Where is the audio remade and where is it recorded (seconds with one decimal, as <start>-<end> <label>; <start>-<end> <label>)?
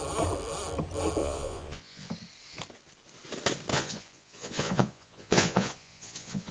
0.0-1.2 recorded; 1.2-2.1 remade; 2.1-3.7 recorded; 3.7-6.5 remade